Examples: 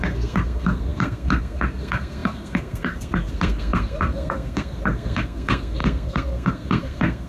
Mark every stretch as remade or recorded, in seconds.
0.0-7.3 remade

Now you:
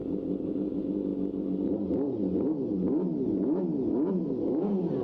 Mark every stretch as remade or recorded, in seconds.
0.0-0.5 recorded; 0.5-1.1 remade; 1.1-4.1 recorded; 4.1-5.0 remade